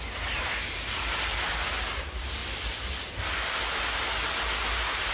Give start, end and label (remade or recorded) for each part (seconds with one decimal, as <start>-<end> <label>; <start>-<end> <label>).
0.0-5.1 recorded